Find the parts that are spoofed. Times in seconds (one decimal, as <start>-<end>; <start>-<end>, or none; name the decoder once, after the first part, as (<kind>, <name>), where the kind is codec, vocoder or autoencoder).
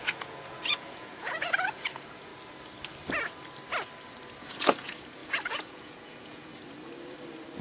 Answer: 0.0-2.3 (vocoder, Vocos); 4.4-6.5